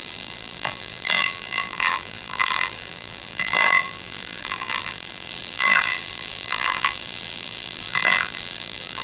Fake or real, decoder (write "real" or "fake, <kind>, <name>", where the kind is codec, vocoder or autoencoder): fake, vocoder, BigVGAN v2